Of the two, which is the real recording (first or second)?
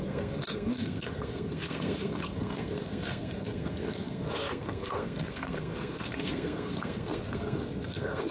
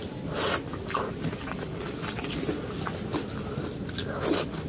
second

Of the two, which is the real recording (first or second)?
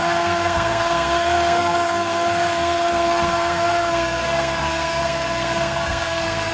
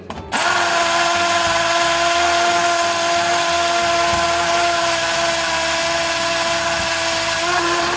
second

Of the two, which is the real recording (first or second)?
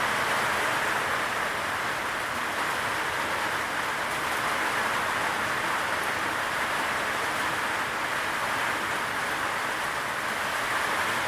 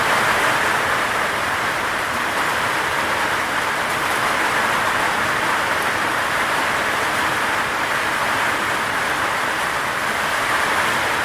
first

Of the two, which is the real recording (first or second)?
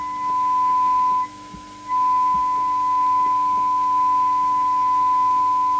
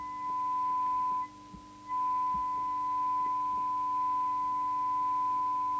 second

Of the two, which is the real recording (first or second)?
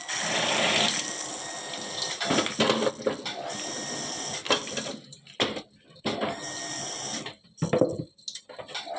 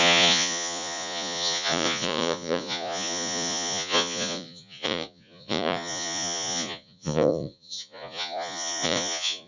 first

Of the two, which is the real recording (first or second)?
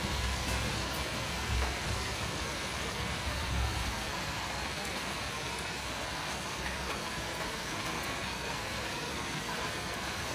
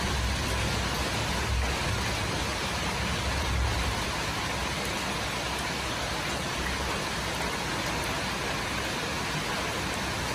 second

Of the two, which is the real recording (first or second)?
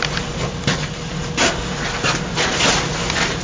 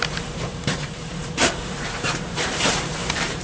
first